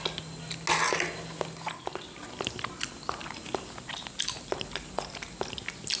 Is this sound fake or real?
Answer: real